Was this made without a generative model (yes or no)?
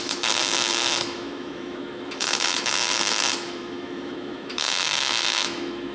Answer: no